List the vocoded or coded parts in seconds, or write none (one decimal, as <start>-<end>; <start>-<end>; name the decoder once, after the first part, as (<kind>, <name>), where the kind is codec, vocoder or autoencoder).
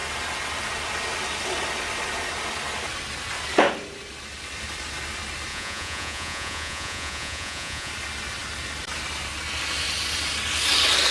5.5-7.9 (vocoder, Vocos)